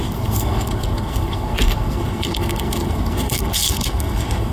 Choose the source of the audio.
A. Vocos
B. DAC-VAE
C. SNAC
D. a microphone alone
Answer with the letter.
C